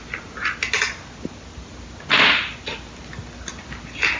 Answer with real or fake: real